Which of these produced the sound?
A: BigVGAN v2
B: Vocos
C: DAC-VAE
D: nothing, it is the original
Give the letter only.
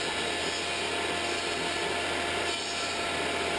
D